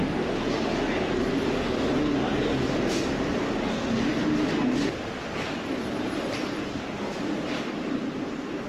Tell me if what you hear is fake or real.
real